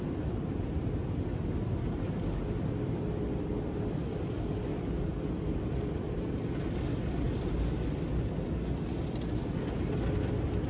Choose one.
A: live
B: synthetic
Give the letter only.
A